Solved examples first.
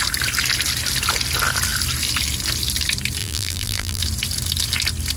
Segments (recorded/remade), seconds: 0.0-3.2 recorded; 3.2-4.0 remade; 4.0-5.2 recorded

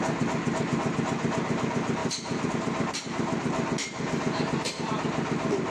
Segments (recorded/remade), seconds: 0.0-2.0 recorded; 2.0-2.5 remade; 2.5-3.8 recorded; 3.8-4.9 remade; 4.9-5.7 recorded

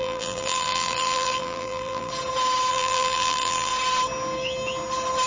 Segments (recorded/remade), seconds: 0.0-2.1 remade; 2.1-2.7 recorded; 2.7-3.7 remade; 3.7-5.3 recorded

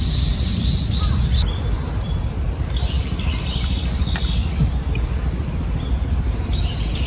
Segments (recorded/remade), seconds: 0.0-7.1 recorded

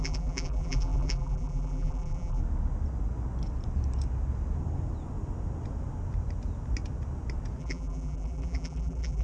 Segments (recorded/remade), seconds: 0.0-2.4 remade; 2.4-7.6 recorded; 7.6-9.2 remade

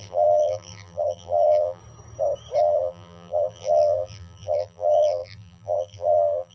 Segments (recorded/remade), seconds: 0.0-1.8 remade; 1.8-2.6 recorded; 2.6-6.5 remade

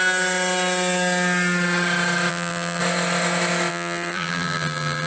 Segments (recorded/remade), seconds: 0.0-2.3 recorded; 2.3-2.8 remade; 2.8-3.7 recorded; 3.7-5.1 remade

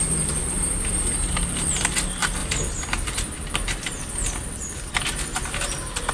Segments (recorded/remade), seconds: 0.0-2.4 recorded; 2.4-4.9 remade; 4.9-6.1 recorded